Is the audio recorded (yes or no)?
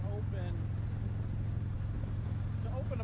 yes